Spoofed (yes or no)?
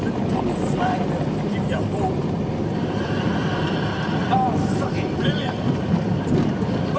no